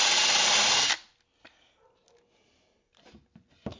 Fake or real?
real